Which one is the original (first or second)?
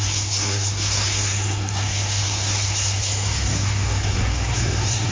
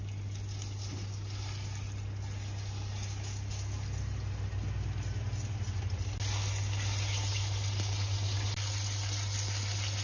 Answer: second